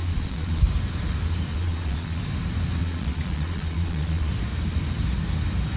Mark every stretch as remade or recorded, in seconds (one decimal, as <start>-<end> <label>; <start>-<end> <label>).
0.0-0.6 remade; 0.6-1.5 recorded; 1.5-2.2 remade; 2.2-2.8 recorded; 2.8-4.3 remade; 4.3-5.8 recorded